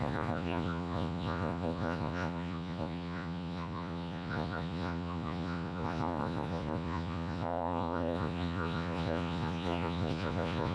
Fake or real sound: fake